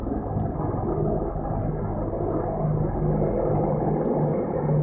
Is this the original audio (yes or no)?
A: yes